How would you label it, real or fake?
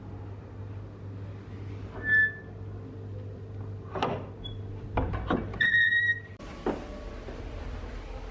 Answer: real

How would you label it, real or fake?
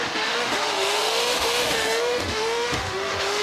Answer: fake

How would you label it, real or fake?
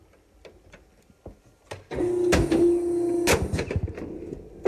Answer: real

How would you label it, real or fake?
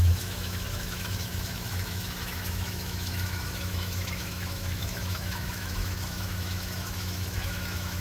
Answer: fake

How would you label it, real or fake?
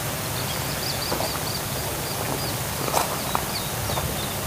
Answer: real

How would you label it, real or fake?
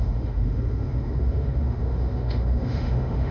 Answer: fake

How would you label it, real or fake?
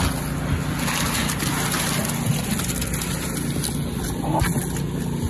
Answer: real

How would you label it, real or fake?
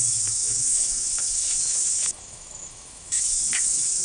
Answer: fake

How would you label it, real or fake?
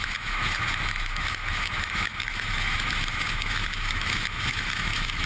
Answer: fake